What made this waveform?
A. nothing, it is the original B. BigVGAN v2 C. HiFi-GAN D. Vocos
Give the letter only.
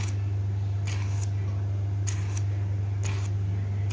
A